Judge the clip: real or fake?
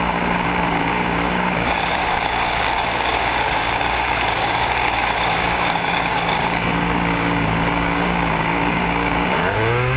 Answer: fake